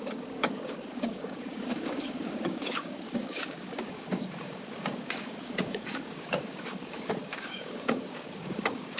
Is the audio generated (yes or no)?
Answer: yes